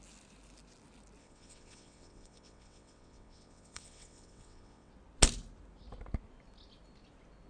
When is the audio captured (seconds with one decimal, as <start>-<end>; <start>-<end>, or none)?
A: 0.0-1.2; 4.9-7.5